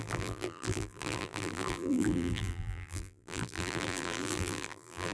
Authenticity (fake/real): fake